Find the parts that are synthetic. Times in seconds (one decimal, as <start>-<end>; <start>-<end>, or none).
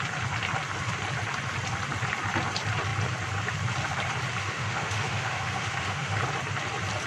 4.4-6.2